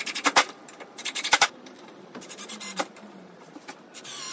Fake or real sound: fake